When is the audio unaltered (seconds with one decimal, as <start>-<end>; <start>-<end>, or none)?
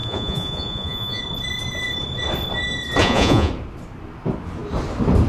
1.2-3.0; 3.5-5.3